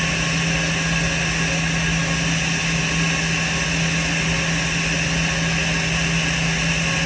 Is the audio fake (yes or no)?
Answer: no